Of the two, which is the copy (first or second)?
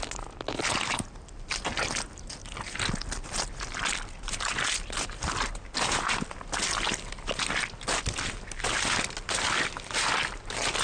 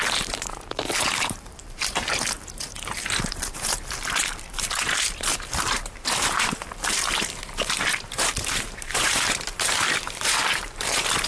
second